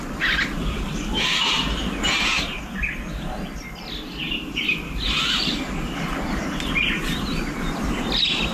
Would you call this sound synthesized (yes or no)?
no